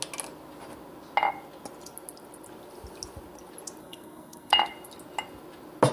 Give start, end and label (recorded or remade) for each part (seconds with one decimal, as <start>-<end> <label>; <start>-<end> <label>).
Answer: 0.0-3.8 recorded; 3.8-4.5 remade; 4.5-5.9 recorded